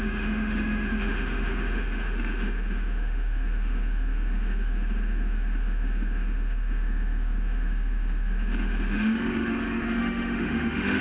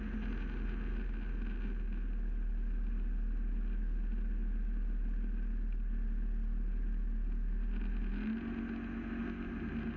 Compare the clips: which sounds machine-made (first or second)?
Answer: first